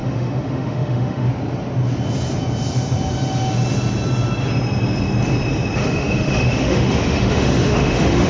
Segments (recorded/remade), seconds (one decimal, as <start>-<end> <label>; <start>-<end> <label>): 0.0-1.3 remade; 1.3-5.8 recorded; 5.8-8.3 remade